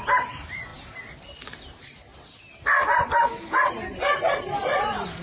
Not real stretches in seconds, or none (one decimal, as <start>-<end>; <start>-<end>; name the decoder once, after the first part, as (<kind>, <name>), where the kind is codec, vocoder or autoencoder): 0.0-0.7 (vocoder, BigVGAN v2); 3.7-5.2